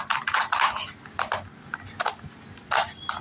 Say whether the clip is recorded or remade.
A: recorded